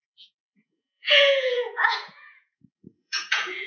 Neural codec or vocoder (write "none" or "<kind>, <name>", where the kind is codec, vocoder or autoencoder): vocoder, Vocos